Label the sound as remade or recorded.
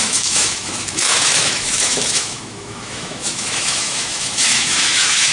remade